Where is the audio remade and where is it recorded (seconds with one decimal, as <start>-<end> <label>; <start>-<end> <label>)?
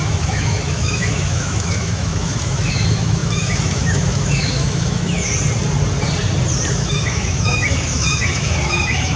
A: 0.0-5.3 remade; 5.3-6.7 recorded; 6.7-9.2 remade